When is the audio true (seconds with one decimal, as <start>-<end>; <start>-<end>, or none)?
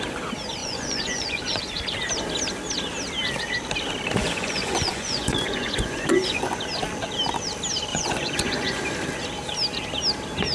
0.0-0.6; 1.6-4.2; 6.6-7.9; 8.8-10.5